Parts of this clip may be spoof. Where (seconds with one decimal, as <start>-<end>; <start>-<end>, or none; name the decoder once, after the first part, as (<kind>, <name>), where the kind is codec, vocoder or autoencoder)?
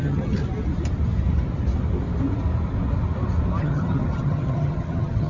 0.0-0.4 (vocoder, HiFi-GAN); 3.6-5.3